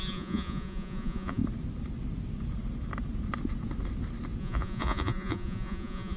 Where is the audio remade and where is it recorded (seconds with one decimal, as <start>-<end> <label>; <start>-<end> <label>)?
0.0-1.4 remade; 1.4-4.4 recorded; 4.4-6.2 remade